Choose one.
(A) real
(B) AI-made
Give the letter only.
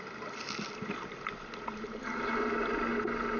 A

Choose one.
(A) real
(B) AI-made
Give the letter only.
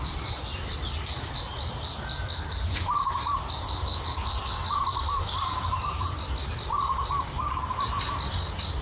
A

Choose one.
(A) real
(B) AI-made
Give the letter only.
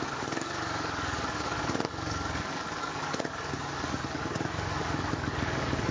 B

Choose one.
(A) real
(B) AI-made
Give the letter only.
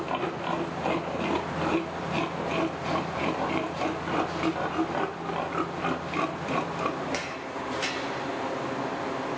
A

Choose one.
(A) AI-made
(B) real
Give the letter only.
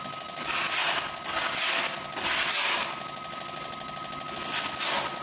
B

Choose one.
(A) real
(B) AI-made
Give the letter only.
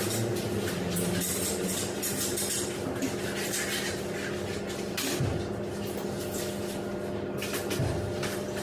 A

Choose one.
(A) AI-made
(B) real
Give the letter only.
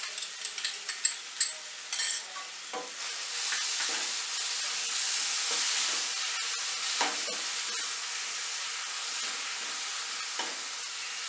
B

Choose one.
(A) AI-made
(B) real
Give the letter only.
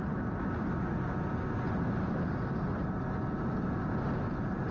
B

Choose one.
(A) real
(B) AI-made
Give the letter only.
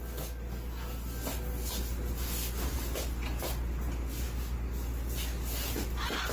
A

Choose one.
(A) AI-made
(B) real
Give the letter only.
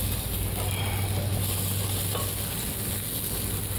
B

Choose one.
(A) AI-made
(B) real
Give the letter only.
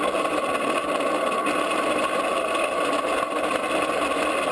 B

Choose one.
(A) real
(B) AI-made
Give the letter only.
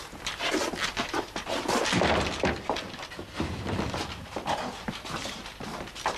A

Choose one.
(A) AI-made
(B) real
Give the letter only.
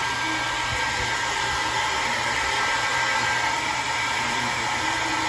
B